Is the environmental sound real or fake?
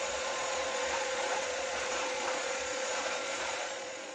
fake